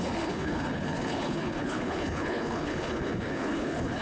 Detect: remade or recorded remade